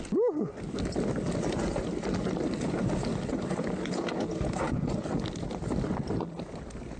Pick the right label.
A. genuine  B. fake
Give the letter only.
A